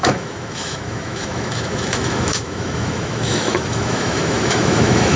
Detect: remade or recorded remade